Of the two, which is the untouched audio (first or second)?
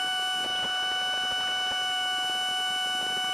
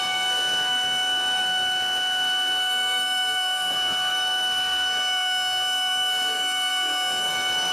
first